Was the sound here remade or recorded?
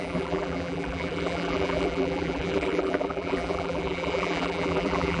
remade